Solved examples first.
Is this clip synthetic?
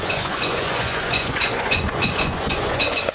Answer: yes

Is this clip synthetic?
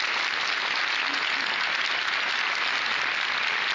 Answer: no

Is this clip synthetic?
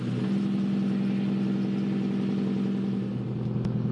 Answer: no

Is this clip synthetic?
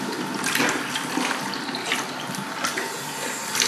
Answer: no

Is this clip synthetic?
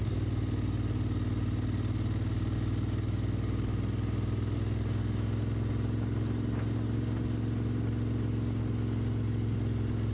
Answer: no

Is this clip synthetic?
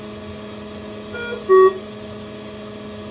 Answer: no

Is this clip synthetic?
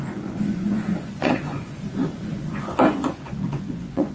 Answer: yes